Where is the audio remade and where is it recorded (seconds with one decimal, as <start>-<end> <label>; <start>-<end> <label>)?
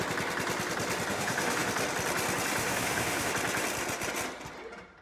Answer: 0.0-1.1 recorded; 1.1-1.7 remade; 1.7-2.6 recorded; 2.6-3.3 remade; 3.3-5.0 recorded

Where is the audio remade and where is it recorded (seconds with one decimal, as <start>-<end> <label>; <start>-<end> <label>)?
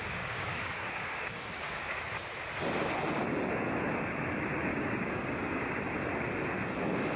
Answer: 0.0-1.9 remade; 1.9-4.7 recorded; 4.7-5.6 remade; 5.6-7.2 recorded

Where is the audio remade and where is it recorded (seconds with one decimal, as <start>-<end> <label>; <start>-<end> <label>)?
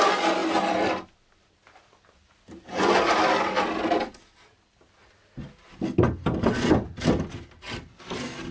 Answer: 0.0-8.5 recorded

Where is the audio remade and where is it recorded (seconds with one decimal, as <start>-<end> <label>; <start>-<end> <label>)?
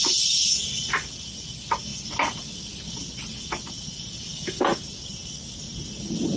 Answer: 0.0-6.4 recorded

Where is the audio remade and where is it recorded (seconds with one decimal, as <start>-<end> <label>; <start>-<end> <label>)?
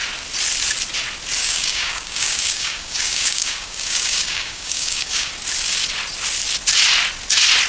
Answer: 0.0-1.4 recorded; 1.4-5.3 remade; 5.3-7.7 recorded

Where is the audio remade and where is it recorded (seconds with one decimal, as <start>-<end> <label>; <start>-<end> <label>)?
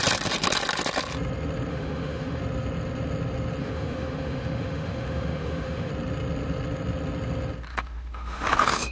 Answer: 0.0-1.7 recorded; 1.7-2.4 remade; 2.4-3.6 recorded; 3.6-5.9 remade; 5.9-7.7 recorded; 7.7-8.9 remade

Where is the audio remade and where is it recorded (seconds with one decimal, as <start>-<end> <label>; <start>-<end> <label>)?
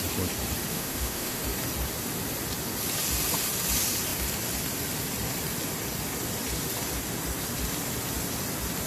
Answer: 0.0-0.7 recorded; 0.7-1.4 remade; 1.4-8.9 recorded